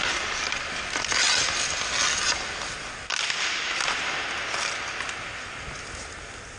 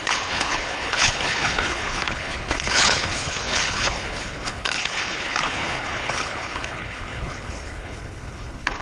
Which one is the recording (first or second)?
first